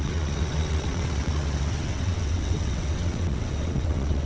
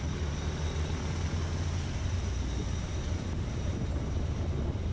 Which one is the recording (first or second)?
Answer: second